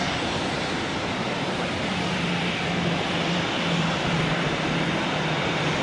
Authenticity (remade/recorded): remade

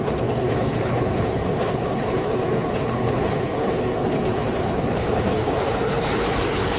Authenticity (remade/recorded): remade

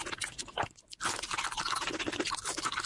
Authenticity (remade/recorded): recorded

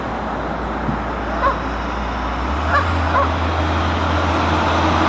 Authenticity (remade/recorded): recorded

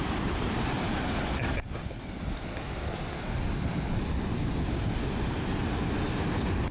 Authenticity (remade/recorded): recorded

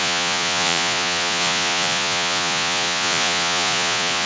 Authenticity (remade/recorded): remade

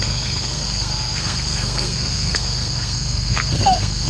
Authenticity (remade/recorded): remade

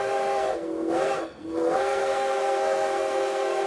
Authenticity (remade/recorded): remade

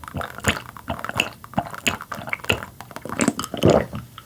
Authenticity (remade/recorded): recorded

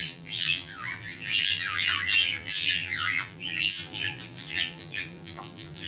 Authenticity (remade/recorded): remade